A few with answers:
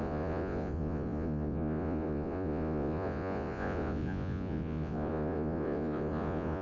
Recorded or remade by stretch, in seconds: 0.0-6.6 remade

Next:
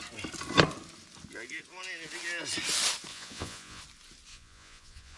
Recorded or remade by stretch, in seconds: 0.0-3.1 recorded; 3.1-3.8 remade; 3.8-4.3 recorded; 4.3-5.2 remade

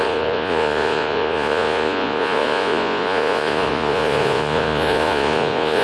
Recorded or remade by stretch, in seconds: 0.0-5.8 remade

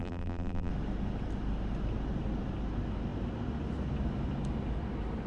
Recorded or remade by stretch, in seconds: 0.0-0.7 remade; 0.7-5.3 recorded

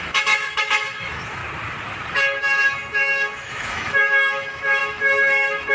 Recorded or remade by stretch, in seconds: 0.0-1.4 remade; 1.4-2.4 recorded; 2.4-5.7 remade

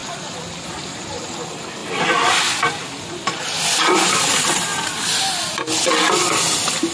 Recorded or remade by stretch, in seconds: 0.0-4.7 recorded; 4.7-5.2 remade; 5.2-6.9 recorded